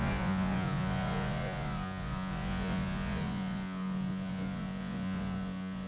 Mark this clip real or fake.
fake